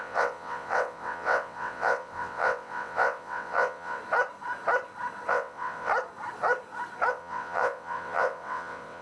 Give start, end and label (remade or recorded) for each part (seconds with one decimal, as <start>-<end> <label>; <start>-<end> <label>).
0.0-4.0 remade; 4.0-5.3 recorded; 5.3-5.9 remade; 5.9-7.1 recorded; 7.1-9.0 remade